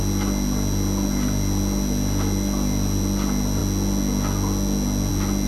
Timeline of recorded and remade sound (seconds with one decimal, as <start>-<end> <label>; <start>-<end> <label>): 0.0-5.5 recorded